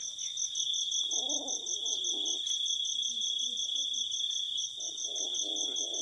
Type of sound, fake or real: real